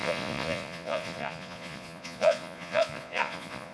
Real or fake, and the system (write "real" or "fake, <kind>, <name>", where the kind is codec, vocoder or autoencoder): fake, vocoder, Vocos